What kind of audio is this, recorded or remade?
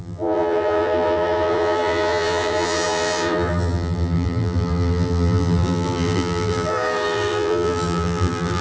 remade